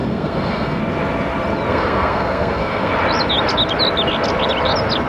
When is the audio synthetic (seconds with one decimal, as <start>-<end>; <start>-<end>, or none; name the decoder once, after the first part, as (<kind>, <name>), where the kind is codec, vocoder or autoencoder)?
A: 0.0-0.8 (codec, SNAC); 1.7-2.9